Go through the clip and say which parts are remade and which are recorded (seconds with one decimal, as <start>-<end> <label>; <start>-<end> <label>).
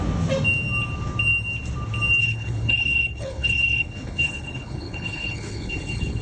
0.0-2.2 recorded; 2.2-6.2 remade